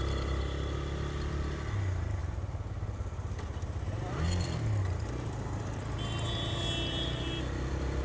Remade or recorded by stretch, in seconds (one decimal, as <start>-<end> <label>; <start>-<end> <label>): 0.0-8.0 recorded